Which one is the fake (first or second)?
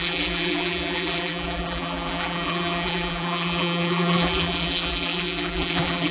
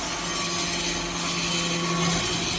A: first